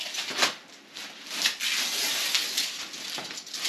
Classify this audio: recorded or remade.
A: recorded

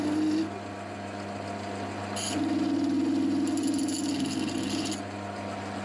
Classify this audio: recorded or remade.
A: recorded